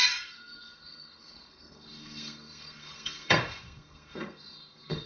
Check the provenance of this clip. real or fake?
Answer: fake